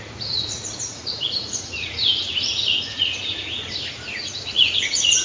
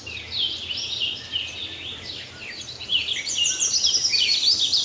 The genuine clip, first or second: second